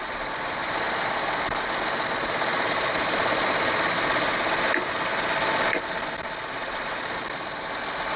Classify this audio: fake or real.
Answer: real